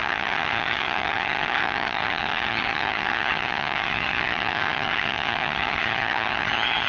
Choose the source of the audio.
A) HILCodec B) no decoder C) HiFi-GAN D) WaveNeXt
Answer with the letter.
C